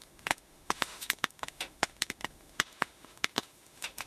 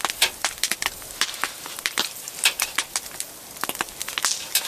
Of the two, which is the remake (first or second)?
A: first